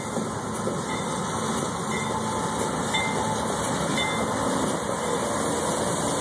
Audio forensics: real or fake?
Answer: real